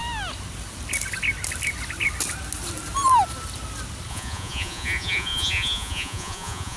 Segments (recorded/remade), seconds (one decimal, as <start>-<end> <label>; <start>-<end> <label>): 0.0-4.1 recorded; 4.1-6.8 remade